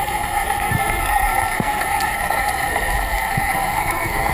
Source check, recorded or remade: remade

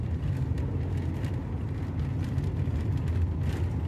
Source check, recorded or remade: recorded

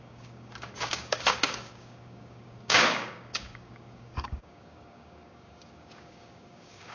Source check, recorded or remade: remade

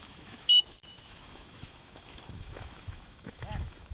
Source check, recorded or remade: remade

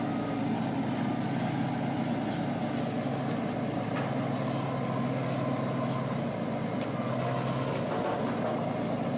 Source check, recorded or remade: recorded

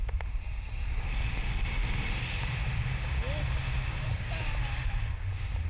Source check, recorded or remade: recorded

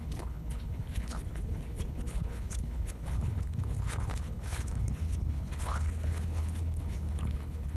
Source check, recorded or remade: remade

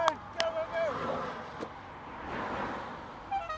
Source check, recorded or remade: recorded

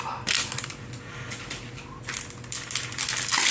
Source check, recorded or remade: remade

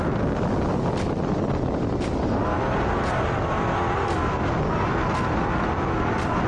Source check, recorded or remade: recorded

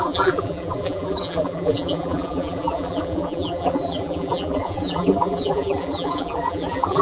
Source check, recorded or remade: remade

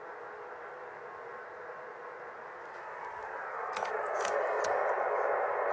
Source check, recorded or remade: recorded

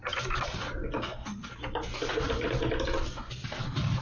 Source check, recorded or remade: recorded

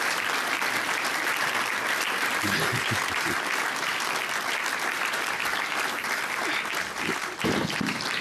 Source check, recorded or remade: remade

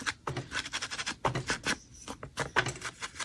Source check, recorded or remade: recorded